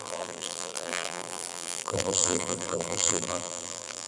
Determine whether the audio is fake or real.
fake